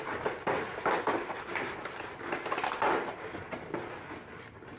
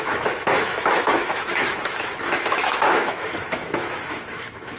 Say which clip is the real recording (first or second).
first